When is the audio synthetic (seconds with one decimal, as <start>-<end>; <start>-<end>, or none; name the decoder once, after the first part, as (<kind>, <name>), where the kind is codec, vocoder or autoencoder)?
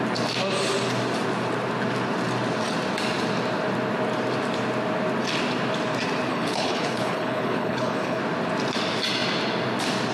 6.3-8.2 (codec, HILCodec)